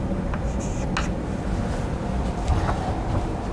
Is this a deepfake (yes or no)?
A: no